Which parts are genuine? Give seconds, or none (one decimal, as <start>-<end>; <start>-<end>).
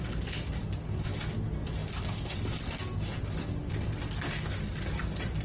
0.0-5.4